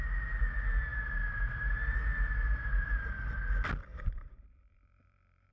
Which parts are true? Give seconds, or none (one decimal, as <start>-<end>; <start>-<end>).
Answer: 0.0-3.9